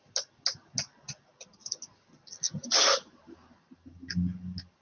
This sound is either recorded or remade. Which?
recorded